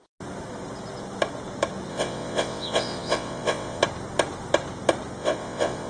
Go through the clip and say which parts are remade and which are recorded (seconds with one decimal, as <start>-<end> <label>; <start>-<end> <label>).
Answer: 0.0-1.9 recorded; 1.9-3.8 remade; 3.8-5.2 recorded; 5.2-5.9 remade